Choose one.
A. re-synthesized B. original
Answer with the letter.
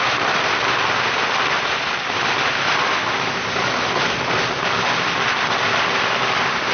B